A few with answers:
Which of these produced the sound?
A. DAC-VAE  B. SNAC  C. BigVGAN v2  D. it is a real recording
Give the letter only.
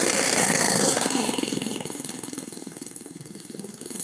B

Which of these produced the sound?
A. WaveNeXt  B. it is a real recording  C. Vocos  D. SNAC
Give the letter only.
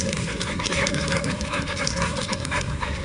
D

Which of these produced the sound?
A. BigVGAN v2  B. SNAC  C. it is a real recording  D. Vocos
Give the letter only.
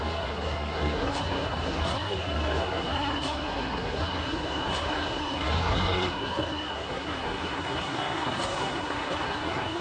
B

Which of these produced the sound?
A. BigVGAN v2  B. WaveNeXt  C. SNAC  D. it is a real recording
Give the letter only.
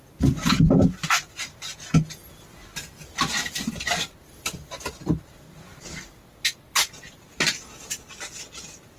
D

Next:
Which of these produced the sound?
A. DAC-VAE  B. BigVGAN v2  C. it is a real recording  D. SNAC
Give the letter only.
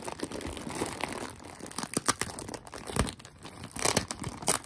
C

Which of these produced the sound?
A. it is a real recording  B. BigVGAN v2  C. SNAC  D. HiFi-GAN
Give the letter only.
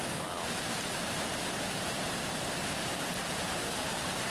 A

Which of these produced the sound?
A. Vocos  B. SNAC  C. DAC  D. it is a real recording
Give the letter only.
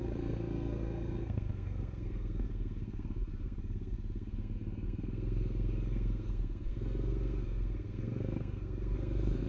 B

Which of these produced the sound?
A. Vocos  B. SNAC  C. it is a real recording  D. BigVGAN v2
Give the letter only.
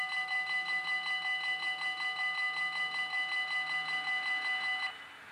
C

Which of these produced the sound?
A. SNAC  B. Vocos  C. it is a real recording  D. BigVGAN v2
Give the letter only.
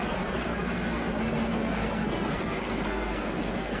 A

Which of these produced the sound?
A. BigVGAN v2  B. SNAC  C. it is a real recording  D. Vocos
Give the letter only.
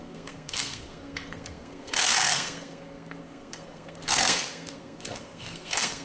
B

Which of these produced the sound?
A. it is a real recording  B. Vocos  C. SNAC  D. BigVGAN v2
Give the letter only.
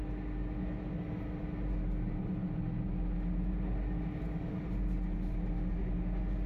A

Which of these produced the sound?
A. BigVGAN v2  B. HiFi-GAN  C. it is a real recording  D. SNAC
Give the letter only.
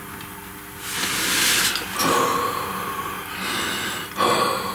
C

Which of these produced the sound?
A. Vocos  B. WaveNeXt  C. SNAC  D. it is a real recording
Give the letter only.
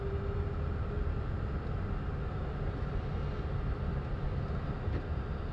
D